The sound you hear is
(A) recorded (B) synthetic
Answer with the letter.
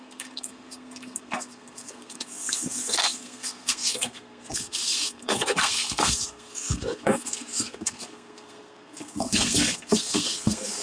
B